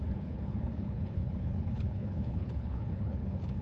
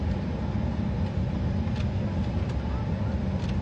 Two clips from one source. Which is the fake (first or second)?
first